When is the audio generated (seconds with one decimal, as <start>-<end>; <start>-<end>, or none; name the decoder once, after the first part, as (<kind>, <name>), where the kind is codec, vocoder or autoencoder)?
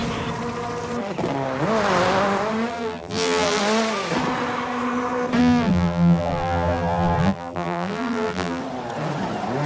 2.7-3.6 (vocoder, BigVGAN v2); 5.4-8.6